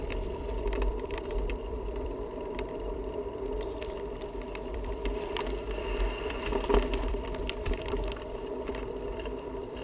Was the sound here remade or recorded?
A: remade